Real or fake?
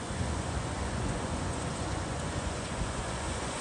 fake